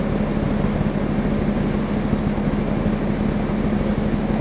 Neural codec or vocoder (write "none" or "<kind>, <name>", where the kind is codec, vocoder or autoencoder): none